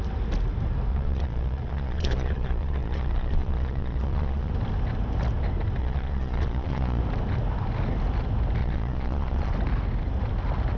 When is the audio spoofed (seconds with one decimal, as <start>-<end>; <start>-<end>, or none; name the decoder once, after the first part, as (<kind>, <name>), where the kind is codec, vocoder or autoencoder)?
0.9-4.5 (vocoder, Vocos); 5.8-7.0; 8.6-9.5

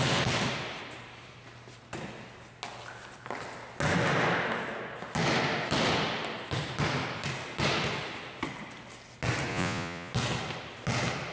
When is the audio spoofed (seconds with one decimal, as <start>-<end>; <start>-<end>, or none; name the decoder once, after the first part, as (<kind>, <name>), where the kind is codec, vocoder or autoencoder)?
9.5-10.1 (vocoder, Vocos)

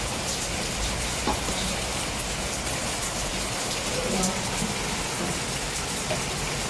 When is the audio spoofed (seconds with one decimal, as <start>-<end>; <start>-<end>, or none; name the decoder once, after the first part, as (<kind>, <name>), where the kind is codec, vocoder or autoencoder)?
3.3-4.1 (vocoder, BigVGAN v2)

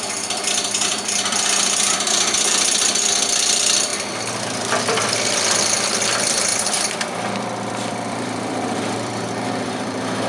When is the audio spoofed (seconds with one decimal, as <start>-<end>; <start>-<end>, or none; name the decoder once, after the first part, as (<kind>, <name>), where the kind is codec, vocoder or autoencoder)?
0.0-3.9 (vocoder, BigVGAN v2); 4.6-10.3

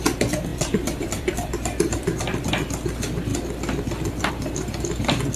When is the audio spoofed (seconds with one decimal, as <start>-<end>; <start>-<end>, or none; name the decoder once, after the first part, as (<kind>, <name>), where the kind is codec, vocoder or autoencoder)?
0.5-2.5 (vocoder, BigVGAN v2)